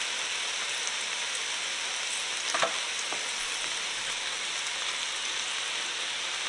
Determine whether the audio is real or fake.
real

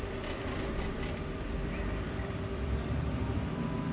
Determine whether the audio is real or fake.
fake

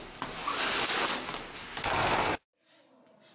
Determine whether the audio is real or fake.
real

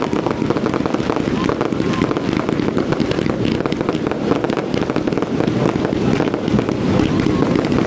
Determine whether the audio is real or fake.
real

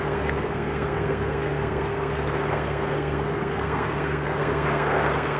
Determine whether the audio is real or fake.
fake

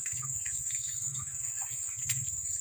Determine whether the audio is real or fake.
fake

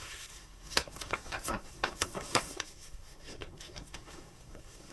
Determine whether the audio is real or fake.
fake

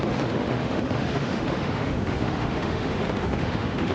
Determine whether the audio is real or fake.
fake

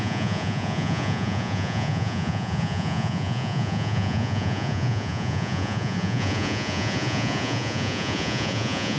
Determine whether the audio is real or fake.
fake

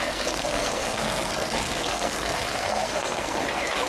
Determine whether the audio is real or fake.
fake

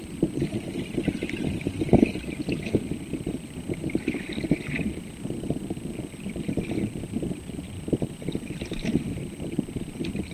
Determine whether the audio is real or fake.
real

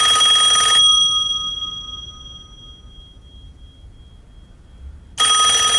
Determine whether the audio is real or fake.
real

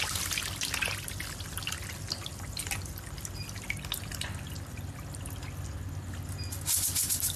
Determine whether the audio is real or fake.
real